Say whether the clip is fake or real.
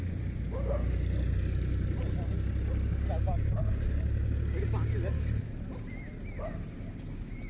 real